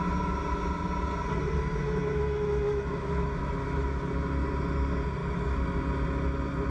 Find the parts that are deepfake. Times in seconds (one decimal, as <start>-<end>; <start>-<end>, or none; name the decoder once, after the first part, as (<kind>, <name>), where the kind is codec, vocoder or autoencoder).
1.8-4.1 (autoencoder, DAC-VAE); 5.2-5.8